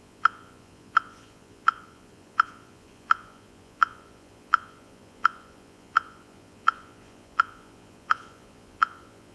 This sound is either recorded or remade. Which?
remade